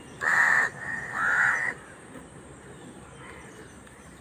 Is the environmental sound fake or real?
fake